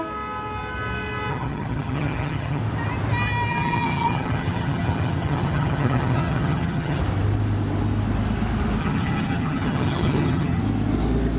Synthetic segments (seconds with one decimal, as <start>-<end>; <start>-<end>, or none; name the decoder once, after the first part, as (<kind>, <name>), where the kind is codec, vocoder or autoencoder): 1.3-2.6 (vocoder, HiFi-GAN); 3.5-7.0; 8.8-10.6